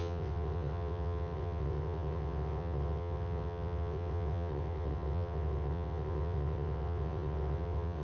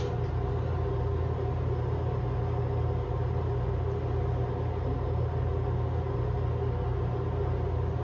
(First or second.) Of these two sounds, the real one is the second